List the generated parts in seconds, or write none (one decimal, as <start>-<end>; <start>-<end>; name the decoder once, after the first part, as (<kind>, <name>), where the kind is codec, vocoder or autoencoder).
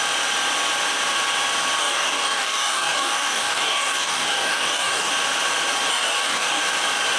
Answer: 1.8-5.1 (codec, DAC); 5.9-6.6